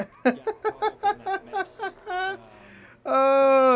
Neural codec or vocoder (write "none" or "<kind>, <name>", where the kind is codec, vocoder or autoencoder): none